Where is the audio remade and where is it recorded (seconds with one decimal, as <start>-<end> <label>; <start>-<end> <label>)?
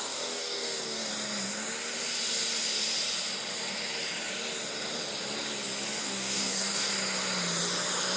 0.0-1.1 remade; 1.1-6.0 recorded; 6.0-6.9 remade; 6.9-8.2 recorded